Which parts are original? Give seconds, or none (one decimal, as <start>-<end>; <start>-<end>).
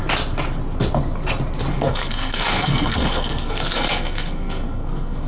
0.0-1.7